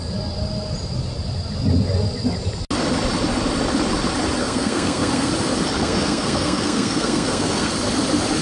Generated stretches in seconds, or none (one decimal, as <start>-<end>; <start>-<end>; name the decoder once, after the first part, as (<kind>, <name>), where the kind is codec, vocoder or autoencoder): 4.4-5.3 (codec, SNAC); 5.8-7.7